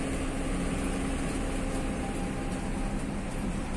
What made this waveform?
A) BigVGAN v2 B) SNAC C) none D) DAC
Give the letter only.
C